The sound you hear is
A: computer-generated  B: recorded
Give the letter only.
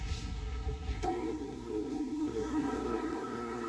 A